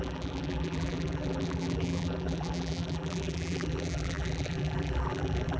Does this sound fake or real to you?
fake